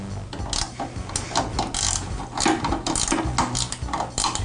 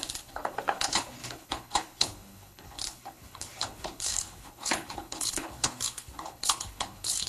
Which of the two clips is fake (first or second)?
second